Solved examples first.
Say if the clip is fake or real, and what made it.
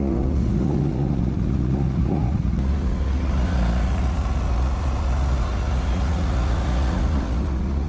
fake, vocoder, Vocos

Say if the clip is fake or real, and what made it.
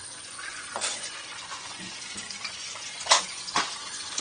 fake, vocoder, Vocos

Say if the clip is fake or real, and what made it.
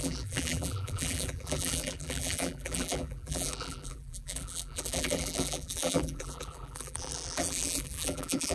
fake, vocoder, BigVGAN v2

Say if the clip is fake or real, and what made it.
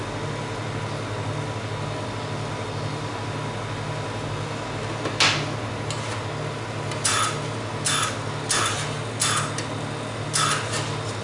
real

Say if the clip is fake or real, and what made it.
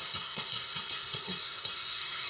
fake, codec, SNAC